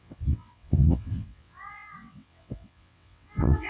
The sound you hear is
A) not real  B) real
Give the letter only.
A